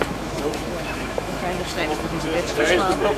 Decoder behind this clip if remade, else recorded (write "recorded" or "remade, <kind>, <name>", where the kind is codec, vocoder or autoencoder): remade, autoencoder, DAC-VAE